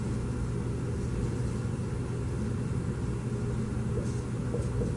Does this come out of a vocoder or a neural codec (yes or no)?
no